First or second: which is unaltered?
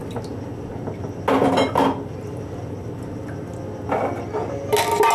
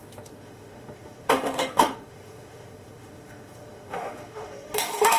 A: first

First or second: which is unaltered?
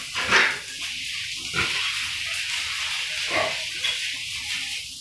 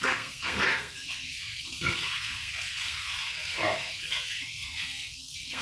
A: first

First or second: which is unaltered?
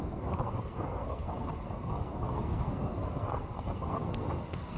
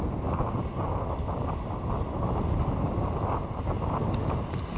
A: second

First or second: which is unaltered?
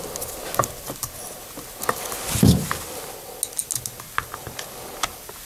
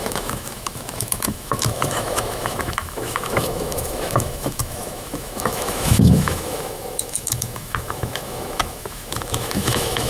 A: first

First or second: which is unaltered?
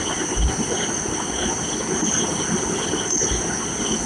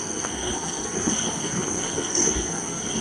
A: first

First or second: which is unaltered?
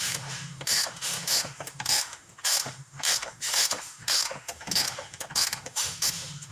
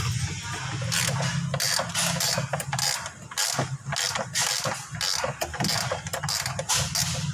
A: second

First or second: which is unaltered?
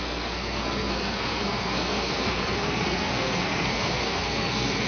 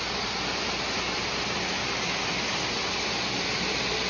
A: second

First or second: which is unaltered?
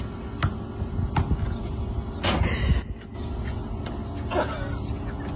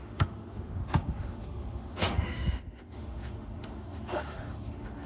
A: first